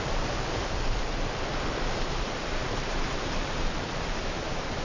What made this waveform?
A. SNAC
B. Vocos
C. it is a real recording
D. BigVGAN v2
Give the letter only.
D